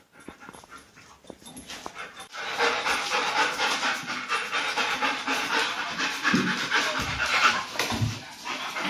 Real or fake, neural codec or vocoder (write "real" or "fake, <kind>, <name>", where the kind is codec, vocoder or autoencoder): real